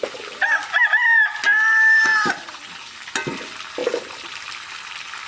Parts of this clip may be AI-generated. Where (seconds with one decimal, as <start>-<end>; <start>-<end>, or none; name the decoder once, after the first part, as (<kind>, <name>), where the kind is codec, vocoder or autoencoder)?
none